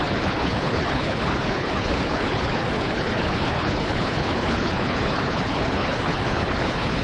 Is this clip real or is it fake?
fake